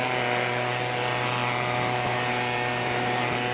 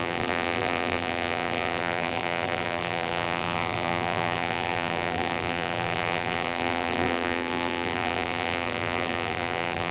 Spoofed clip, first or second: second